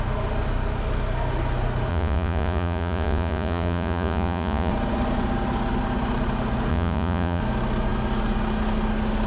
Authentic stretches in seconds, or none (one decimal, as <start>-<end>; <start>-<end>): 0.0-1.9; 4.7-6.7; 7.4-9.3